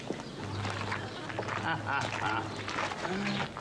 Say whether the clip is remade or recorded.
recorded